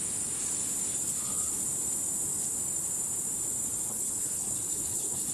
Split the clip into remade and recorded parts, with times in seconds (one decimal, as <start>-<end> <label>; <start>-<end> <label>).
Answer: 0.0-0.9 recorded; 0.9-1.5 remade; 1.5-3.9 recorded; 3.9-5.3 remade